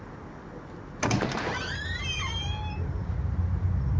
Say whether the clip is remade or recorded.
recorded